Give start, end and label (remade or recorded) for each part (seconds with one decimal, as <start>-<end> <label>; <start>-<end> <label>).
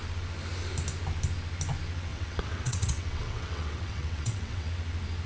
0.0-2.1 recorded; 2.1-4.7 remade; 4.7-5.3 recorded